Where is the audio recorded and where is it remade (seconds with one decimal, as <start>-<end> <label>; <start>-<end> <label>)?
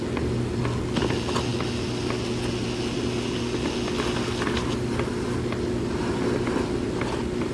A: 0.0-7.5 recorded